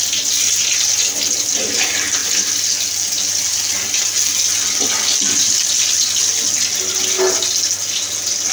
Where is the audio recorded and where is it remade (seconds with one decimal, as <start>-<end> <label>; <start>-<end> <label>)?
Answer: 0.0-8.5 recorded